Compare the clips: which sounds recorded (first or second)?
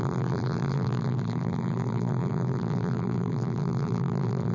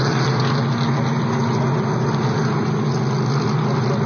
second